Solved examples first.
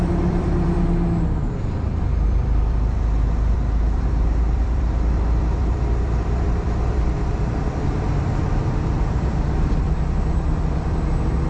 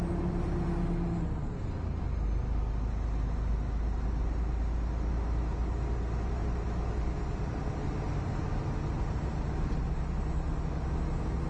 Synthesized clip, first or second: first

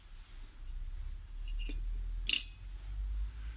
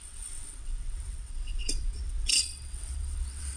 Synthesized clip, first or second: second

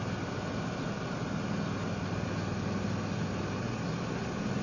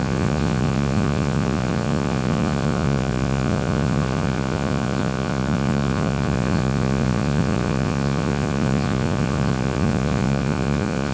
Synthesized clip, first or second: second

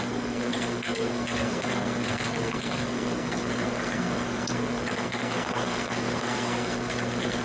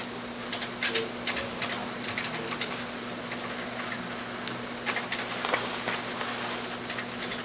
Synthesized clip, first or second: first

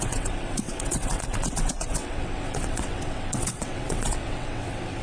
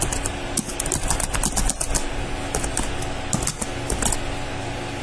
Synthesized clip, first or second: first